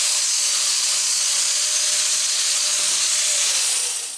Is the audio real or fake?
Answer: fake